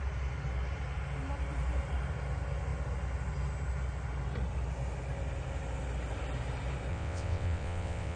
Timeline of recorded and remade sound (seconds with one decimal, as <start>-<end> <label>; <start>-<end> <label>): 0.0-6.9 recorded; 6.9-8.2 remade